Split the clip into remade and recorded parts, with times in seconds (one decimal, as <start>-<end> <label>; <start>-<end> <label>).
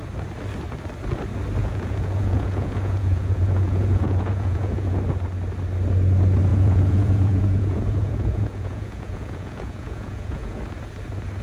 0.0-1.6 recorded; 1.6-5.0 remade; 5.0-6.5 recorded; 6.5-10.6 remade; 10.6-11.4 recorded